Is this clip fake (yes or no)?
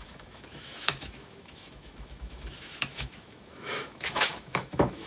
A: yes